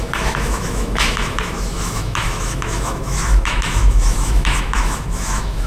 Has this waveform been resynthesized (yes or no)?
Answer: yes